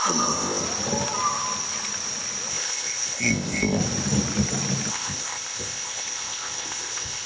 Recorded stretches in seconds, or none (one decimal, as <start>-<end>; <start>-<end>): 0.6-2.5; 3.8-4.9